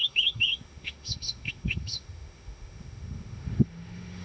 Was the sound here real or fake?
fake